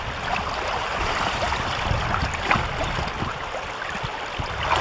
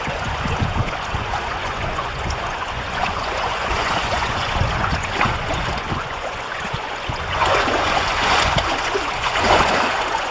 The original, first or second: first